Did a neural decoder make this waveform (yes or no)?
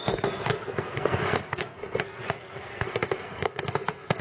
yes